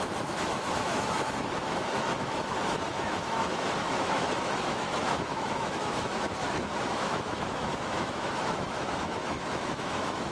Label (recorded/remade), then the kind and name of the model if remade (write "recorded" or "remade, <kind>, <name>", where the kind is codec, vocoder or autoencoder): remade, autoencoder, DAC-VAE